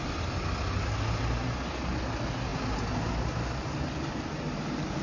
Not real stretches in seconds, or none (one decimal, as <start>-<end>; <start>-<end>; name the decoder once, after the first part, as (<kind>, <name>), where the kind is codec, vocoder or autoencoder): none